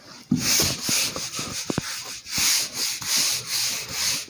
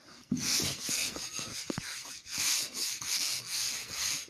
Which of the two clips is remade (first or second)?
second